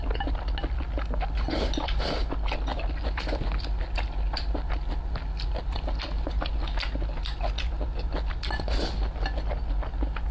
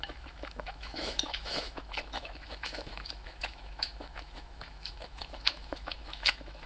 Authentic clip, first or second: first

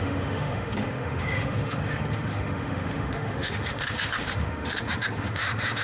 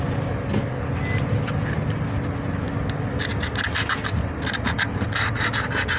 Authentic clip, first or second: second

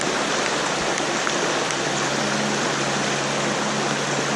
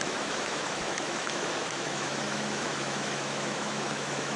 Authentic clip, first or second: first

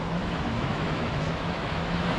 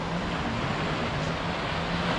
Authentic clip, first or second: second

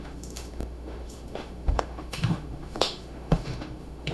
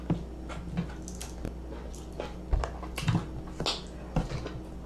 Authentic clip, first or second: second